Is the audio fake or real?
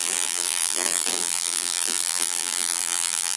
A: fake